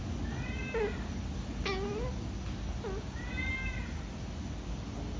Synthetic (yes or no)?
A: no